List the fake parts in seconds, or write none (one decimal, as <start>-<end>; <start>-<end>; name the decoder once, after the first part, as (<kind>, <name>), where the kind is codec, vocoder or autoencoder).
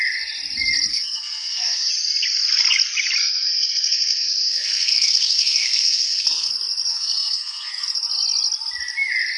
0.9-1.9 (codec, SNAC); 3.2-6.5; 6.9-7.7